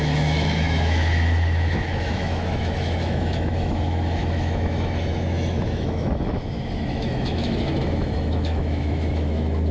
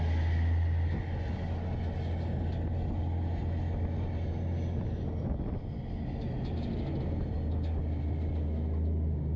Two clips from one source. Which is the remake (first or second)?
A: first